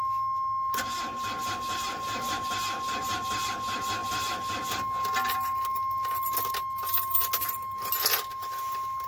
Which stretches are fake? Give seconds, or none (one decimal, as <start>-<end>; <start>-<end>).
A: none